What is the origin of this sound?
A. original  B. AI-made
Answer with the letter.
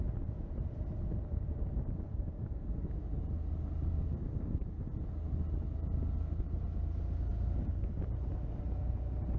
A